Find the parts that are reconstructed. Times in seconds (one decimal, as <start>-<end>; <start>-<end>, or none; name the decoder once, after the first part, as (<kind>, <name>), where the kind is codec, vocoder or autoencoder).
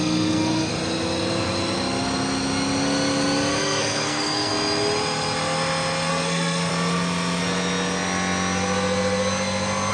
0.0-0.7 (codec, SNAC); 3.6-4.5; 6.1-6.7